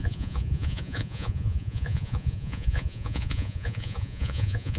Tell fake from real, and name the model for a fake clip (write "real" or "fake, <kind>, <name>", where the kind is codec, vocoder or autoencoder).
fake, vocoder, Vocos